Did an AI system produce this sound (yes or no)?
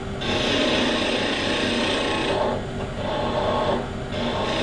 no